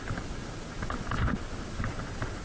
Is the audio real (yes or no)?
yes